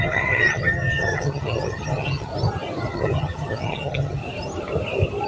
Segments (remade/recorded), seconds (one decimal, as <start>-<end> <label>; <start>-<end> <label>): 0.0-2.3 remade; 2.3-2.9 recorded; 2.9-4.2 remade; 4.2-5.3 recorded